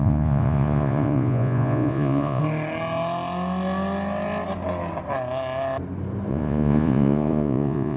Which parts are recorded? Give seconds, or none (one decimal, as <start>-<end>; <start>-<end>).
2.4-6.3